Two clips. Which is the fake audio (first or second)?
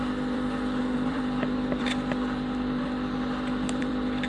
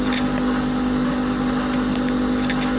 first